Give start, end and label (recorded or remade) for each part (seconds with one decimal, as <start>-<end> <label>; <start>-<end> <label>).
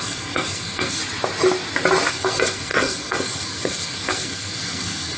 0.0-1.0 remade; 1.0-2.1 recorded; 2.1-5.2 remade